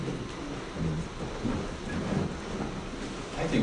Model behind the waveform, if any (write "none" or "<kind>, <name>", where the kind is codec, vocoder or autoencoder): none